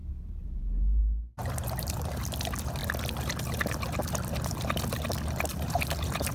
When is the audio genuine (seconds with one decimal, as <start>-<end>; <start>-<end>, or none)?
1.0-1.4; 2.2-5.5